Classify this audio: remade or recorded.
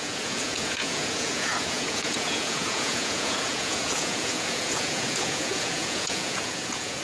remade